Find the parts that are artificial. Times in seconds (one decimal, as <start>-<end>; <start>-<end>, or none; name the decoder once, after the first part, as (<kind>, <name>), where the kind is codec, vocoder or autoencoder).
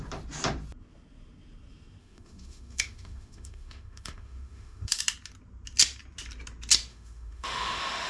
2.0-5.0 (autoencoder, DAC-VAE); 6.9-8.1